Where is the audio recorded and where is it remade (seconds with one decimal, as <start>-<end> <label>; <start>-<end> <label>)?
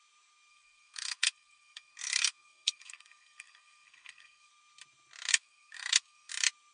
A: 0.0-0.5 recorded; 0.5-4.5 remade; 4.5-5.3 recorded; 5.3-6.3 remade; 6.3-6.7 recorded